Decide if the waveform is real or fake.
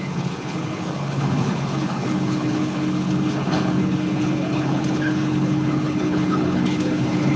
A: fake